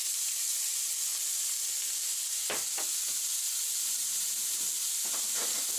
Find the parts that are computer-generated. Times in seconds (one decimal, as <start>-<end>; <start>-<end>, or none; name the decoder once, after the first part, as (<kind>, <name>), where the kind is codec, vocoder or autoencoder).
none